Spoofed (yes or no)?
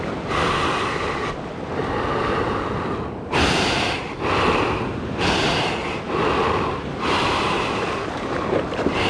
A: no